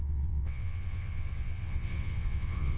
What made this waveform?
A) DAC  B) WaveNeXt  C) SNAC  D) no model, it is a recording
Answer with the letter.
B